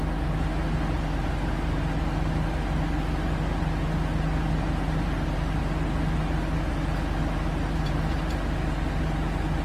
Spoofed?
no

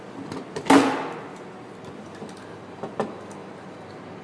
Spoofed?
no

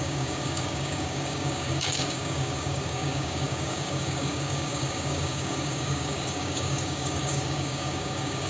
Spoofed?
yes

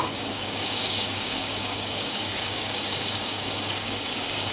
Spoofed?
yes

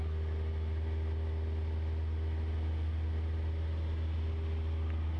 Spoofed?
no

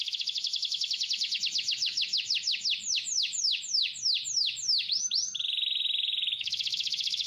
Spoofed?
yes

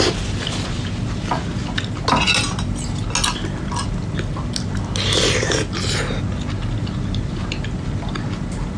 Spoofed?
no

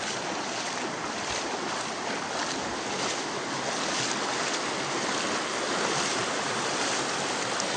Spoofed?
no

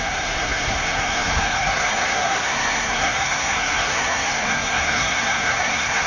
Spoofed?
yes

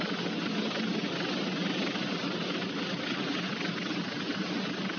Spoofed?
no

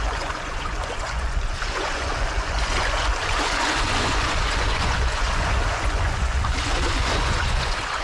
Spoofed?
yes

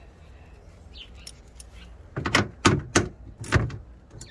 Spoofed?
no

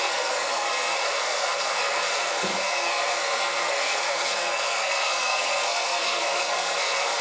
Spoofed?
yes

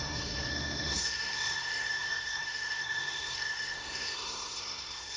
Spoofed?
yes